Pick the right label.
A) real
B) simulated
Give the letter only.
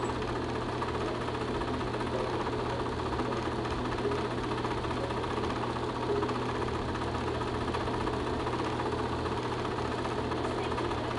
A